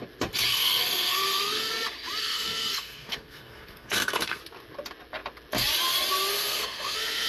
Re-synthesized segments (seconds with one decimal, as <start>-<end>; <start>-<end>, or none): 0.5-1.7; 2.2-4.4; 6.3-7.3